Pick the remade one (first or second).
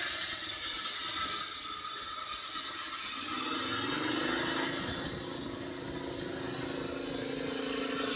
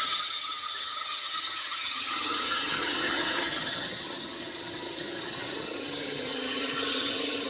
second